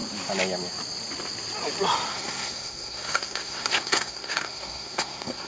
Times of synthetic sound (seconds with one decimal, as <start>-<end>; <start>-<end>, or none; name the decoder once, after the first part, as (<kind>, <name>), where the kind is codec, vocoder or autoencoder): 2.1-5.5 (codec, SNAC)